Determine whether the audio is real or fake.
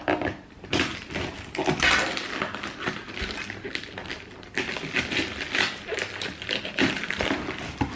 real